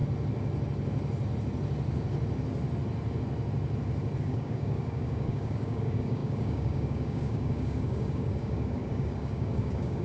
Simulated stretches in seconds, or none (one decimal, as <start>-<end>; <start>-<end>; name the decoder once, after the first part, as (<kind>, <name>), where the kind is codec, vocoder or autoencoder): 4.2-10.0 (codec, DAC)